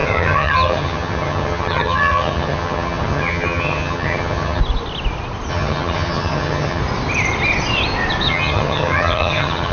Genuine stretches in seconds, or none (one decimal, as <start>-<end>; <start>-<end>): 4.6-5.5; 6.8-8.3